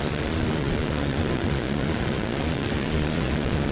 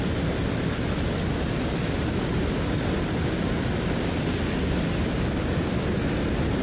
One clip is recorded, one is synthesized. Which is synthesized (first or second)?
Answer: first